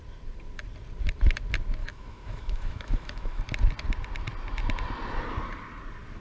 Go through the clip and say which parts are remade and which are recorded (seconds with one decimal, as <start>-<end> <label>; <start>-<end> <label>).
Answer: 0.0-1.8 recorded; 1.8-3.4 remade; 3.4-6.2 recorded

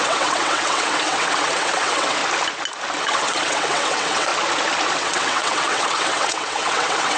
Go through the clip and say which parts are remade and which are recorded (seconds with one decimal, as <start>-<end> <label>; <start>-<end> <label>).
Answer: 0.0-2.2 remade; 2.2-3.0 recorded; 3.0-4.3 remade; 4.3-5.0 recorded; 5.0-7.2 remade